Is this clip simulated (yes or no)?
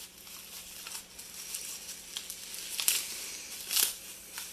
no